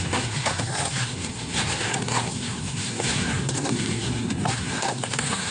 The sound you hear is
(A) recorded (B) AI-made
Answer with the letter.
B